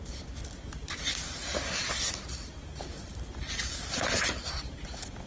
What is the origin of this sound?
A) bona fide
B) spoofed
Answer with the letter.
A